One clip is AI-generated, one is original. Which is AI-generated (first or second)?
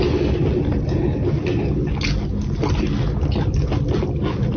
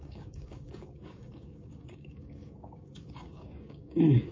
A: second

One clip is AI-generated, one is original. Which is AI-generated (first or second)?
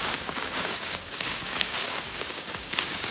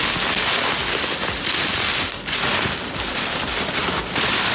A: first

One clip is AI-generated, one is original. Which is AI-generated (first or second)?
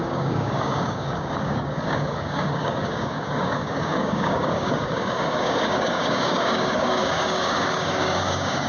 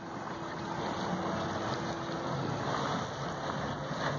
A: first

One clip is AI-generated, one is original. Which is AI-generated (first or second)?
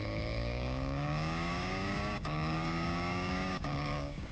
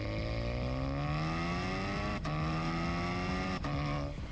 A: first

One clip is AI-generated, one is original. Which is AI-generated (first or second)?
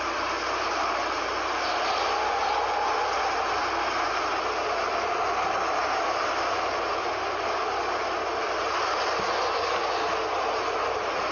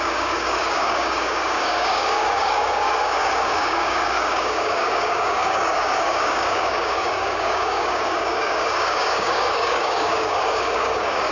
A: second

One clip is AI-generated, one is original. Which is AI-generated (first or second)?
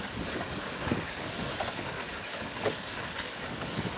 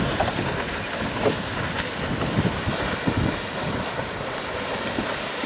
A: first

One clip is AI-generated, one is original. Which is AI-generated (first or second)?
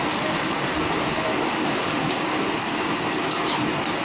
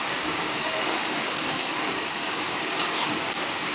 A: second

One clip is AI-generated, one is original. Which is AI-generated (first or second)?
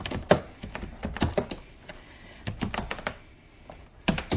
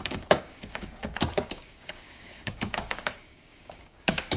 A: second